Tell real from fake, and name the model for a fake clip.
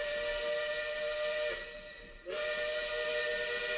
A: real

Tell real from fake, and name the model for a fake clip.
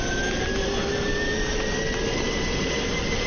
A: real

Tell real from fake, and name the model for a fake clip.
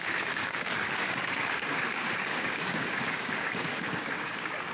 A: fake, codec, DAC